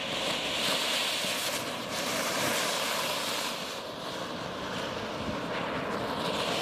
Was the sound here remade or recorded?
recorded